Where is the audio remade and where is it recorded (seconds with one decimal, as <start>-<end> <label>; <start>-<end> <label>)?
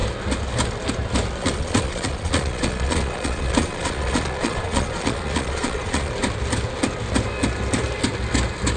0.0-1.4 recorded; 1.4-6.1 remade; 6.1-8.8 recorded